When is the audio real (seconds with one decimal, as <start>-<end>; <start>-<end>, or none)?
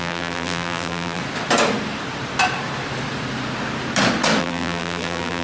1.2-4.4